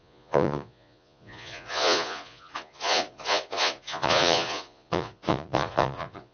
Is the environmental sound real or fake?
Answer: fake